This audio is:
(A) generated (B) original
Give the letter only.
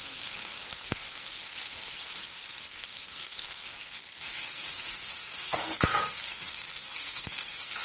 A